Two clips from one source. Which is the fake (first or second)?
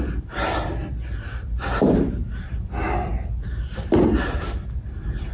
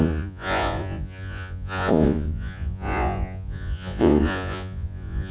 second